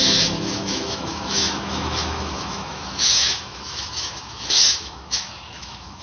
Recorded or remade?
remade